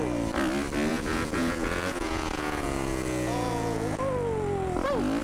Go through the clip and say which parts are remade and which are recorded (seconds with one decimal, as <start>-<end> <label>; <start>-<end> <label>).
0.0-0.9 recorded; 0.9-4.0 remade; 4.0-5.2 recorded